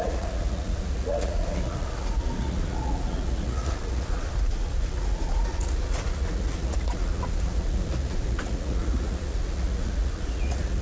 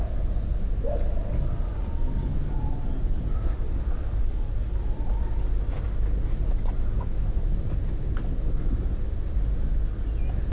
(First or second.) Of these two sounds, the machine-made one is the first